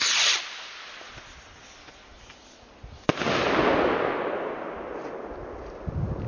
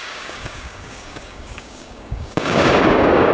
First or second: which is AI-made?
second